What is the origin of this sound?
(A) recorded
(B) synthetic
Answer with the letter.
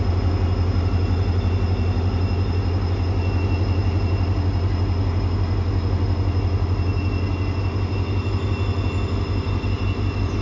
A